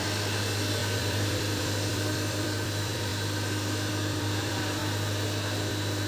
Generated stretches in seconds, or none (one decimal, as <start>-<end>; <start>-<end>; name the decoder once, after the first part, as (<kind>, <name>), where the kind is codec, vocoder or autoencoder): 0.0-3.1 (vocoder, BigVGAN v2); 3.9-4.8; 5.6-6.1